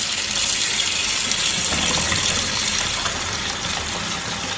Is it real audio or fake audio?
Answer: real